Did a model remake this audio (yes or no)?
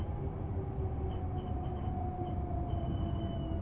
no